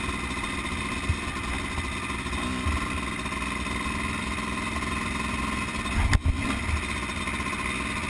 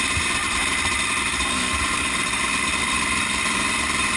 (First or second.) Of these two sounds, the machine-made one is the second